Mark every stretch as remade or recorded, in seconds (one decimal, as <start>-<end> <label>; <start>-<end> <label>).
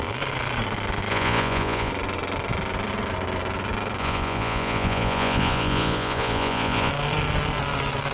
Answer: 0.0-1.1 recorded; 1.1-1.9 remade; 1.9-4.0 recorded; 4.0-6.9 remade; 6.9-8.1 recorded